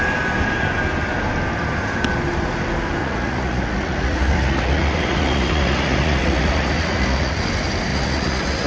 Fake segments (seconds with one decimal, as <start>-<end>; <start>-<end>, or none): 3.0-7.4; 7.9-8.7